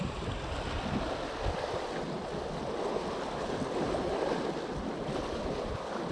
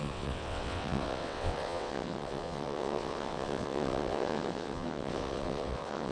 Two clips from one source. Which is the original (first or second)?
first